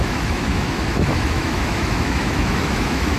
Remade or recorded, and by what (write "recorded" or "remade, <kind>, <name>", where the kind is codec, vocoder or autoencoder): remade, autoencoder, DAC-VAE